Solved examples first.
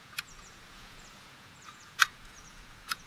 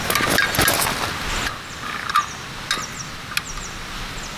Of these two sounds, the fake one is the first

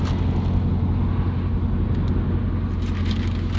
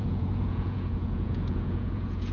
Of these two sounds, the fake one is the second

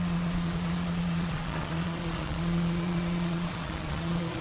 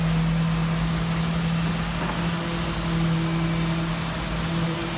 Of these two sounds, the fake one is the first